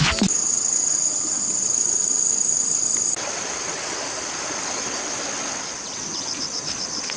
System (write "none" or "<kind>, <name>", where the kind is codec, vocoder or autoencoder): none